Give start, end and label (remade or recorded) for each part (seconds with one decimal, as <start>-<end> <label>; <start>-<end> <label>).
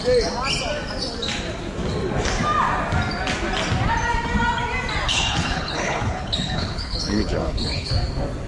0.0-5.1 recorded; 5.1-7.9 remade; 7.9-8.5 recorded